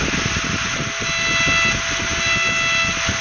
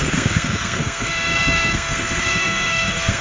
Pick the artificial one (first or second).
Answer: second